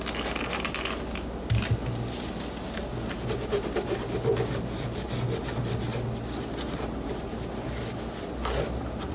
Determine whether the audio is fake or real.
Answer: real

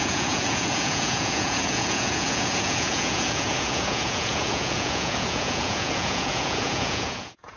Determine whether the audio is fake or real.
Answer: fake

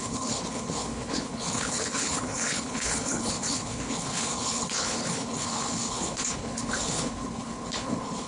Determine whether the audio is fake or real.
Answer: fake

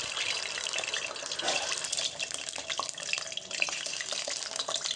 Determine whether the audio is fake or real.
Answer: real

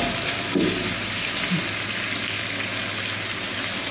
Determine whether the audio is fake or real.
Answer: real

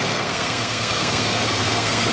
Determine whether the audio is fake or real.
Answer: fake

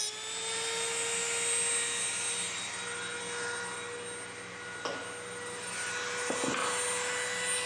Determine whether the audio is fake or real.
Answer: real